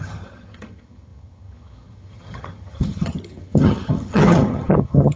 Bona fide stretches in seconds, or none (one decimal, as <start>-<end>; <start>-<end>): none